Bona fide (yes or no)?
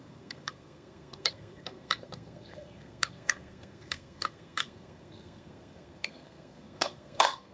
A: no